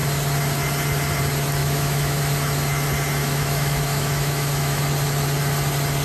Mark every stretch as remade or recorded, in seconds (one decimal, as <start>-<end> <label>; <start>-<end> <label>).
0.0-1.6 recorded; 1.6-2.2 remade; 2.2-3.2 recorded; 3.2-4.8 remade; 4.8-6.0 recorded